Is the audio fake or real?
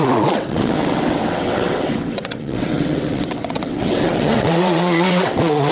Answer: fake